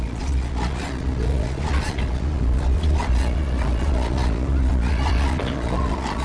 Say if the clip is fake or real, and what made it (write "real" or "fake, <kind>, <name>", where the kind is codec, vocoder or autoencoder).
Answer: fake, vocoder, Vocos